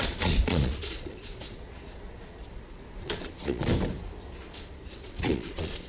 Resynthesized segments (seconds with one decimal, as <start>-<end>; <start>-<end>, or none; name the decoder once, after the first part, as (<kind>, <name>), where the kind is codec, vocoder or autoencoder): 0.0-3.7 (vocoder, Vocos); 4.9-5.9